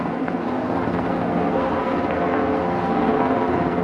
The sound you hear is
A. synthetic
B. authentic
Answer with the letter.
A